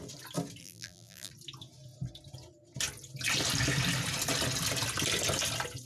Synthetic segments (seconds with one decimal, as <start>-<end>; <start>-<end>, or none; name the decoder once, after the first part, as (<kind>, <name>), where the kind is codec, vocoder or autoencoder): 0.6-1.3 (vocoder, BigVGAN v2)